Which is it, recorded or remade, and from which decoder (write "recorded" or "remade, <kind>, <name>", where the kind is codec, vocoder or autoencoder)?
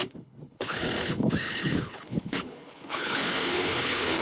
remade, codec, HILCodec